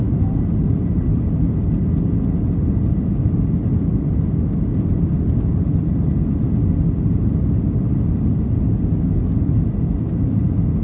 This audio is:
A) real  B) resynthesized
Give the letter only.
A